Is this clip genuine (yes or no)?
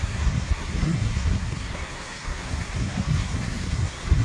no